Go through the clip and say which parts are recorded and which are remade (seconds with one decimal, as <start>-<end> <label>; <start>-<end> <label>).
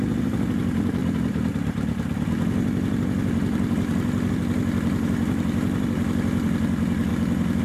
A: 0.0-7.1 remade; 7.1-7.6 recorded